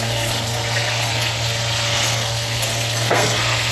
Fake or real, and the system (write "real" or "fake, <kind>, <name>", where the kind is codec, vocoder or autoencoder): fake, codec, SNAC